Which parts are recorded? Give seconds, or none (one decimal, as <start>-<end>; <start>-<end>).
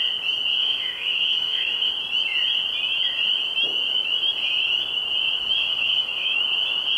0.0-0.6; 1.9-5.6; 6.4-7.0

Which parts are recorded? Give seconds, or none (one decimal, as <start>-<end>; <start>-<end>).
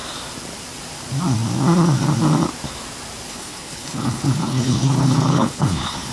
0.0-3.3